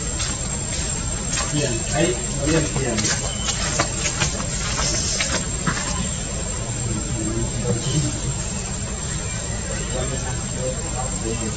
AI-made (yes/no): no